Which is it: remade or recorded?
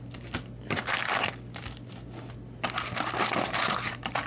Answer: recorded